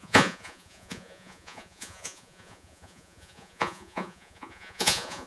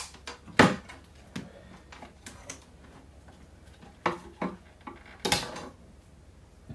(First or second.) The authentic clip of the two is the second